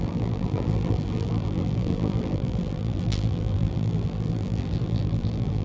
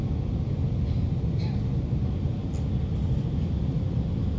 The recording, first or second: second